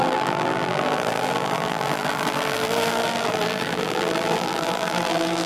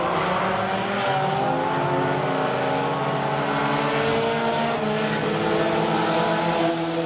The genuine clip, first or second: second